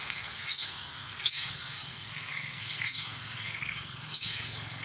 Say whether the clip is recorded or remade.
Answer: remade